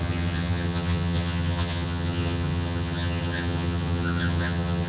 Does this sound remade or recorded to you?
remade